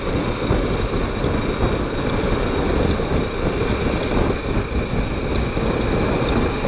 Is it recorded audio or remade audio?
recorded